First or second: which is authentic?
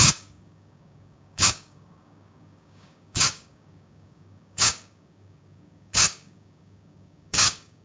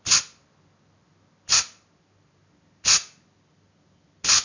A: second